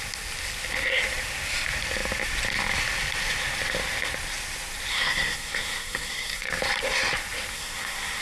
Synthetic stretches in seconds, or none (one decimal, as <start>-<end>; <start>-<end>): 4.9-6.5; 7.5-8.2